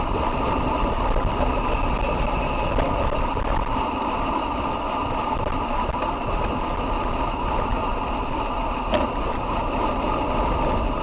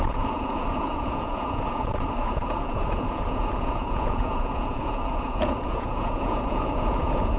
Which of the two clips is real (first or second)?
first